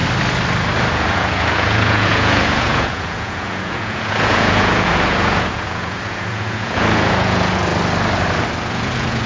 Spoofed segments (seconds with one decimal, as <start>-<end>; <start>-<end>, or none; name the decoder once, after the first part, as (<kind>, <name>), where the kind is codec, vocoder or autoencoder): 0.9-7.7 (vocoder, Vocos); 8.7-9.3